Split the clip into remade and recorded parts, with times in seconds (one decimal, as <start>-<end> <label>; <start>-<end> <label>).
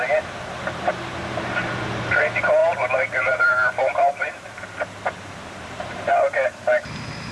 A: 0.0-2.6 recorded; 2.6-6.1 remade; 6.1-7.3 recorded